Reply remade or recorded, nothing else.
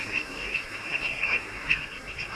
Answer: remade